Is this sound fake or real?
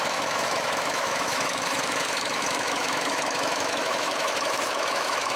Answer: fake